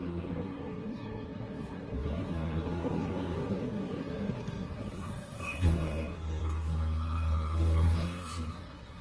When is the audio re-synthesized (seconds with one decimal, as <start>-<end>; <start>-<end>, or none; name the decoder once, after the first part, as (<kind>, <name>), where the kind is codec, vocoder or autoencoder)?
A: 0.0-9.0 (codec, SNAC)